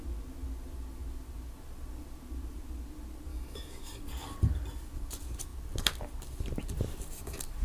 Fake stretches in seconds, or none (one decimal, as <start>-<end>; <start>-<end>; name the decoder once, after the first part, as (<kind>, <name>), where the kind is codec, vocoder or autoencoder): 3.3-4.0 (autoencoder, DAC-VAE)